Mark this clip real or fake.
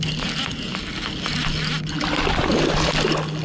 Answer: real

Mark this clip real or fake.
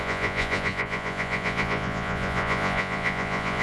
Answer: fake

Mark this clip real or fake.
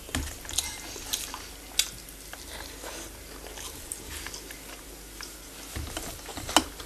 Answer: real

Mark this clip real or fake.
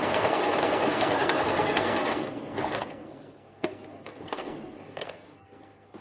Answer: fake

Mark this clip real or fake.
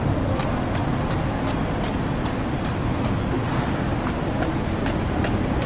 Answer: real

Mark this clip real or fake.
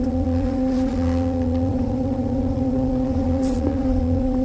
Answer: fake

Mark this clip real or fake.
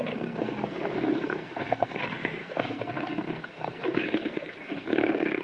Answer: fake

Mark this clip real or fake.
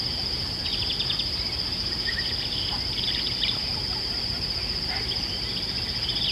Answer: real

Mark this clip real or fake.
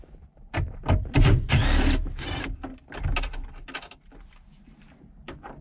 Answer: real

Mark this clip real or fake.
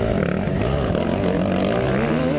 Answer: real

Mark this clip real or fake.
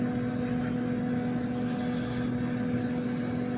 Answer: real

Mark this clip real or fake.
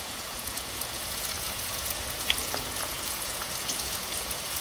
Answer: fake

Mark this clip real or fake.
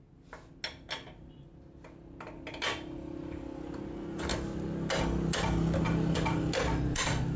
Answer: real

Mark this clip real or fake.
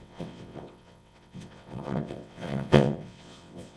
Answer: fake